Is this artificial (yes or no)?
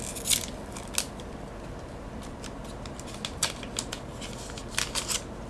no